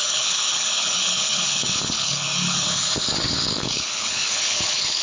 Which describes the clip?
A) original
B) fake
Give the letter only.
B